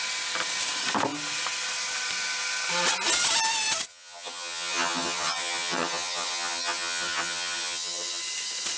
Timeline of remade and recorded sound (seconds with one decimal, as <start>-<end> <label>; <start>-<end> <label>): 0.0-3.9 recorded; 3.9-8.2 remade; 8.2-8.8 recorded